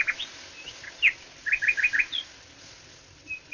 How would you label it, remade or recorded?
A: recorded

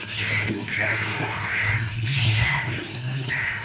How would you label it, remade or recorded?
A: remade